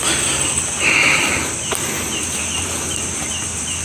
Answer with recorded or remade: recorded